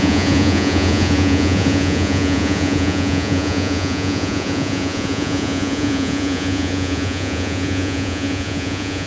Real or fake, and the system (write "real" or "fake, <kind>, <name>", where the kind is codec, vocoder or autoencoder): fake, vocoder, Vocos